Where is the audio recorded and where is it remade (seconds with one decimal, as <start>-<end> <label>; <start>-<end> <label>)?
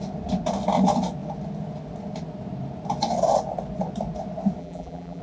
0.0-4.6 recorded; 4.6-5.2 remade